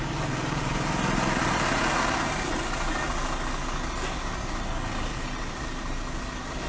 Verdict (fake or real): real